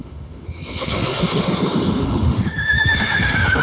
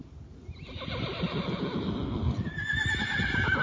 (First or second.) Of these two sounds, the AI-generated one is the first